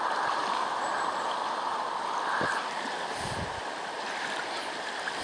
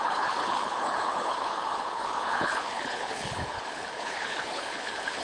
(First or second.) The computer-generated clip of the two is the second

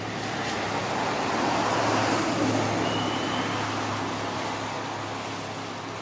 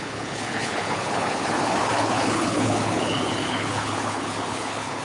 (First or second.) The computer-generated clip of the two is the second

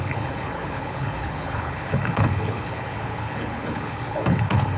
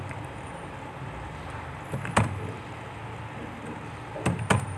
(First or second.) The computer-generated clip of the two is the first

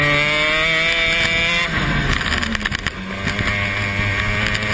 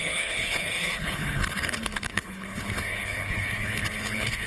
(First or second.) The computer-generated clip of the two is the second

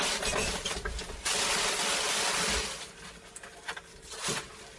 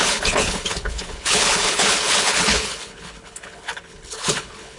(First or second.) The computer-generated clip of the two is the second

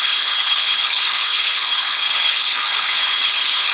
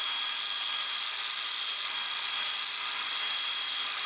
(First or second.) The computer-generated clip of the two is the first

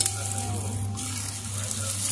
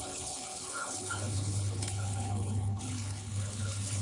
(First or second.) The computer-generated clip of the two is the second